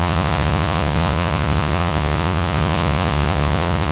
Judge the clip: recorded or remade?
remade